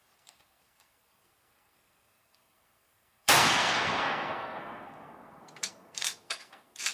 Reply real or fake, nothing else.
fake